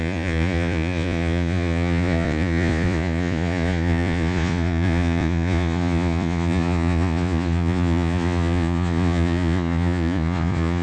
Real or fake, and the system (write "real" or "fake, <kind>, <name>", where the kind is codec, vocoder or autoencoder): fake, vocoder, Vocos